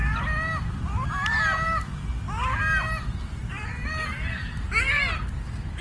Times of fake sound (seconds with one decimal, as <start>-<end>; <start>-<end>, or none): none